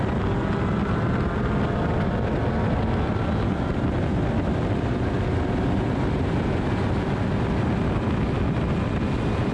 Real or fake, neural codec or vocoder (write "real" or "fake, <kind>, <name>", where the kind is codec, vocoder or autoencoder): real